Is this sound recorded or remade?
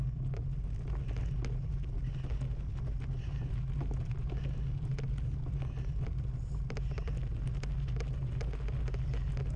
recorded